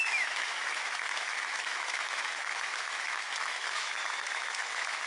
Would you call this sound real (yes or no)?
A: no